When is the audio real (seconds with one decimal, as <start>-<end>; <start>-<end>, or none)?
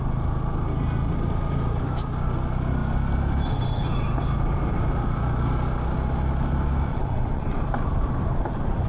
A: 0.0-6.9; 7.6-8.9